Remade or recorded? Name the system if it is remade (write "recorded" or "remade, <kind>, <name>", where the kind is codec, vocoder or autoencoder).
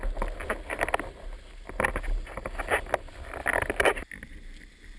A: recorded